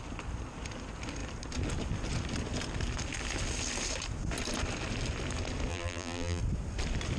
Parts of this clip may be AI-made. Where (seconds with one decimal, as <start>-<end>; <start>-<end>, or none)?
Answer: 5.7-6.4